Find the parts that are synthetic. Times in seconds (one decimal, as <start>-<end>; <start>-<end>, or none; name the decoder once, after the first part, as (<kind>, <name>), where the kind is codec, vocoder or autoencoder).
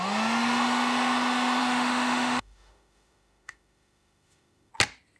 1.6-4.7 (autoencoder, DAC-VAE)